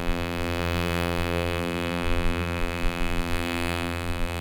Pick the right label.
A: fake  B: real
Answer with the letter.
A